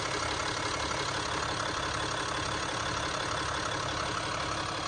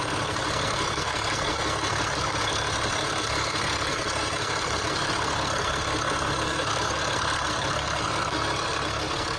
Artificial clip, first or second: second